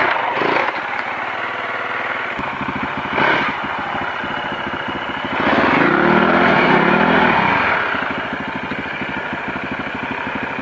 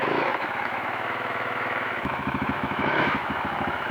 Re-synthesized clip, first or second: second